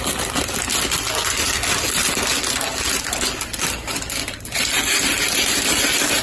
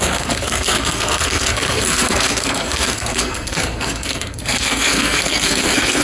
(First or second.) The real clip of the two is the first